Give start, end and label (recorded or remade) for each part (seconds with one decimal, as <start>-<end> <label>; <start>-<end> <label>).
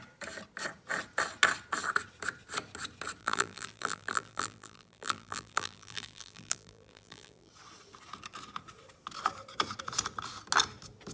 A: 0.0-3.2 recorded; 3.2-7.5 remade; 7.5-11.1 recorded